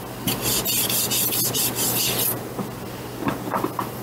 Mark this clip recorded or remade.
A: recorded